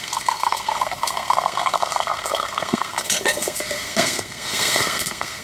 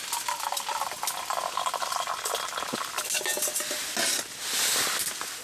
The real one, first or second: second